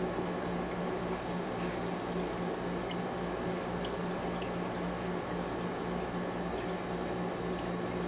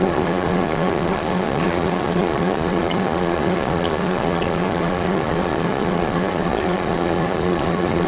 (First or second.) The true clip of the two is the first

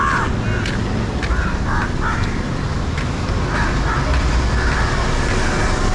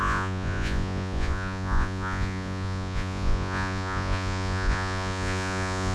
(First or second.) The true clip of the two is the first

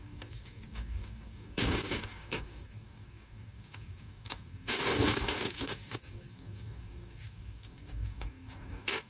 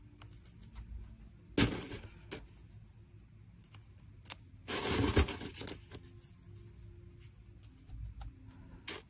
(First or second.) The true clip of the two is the second